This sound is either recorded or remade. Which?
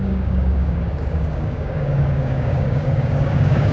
remade